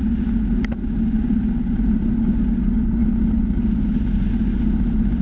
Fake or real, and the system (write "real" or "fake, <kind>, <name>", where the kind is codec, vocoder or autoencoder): real